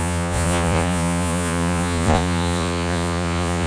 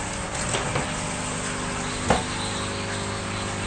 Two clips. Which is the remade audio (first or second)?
first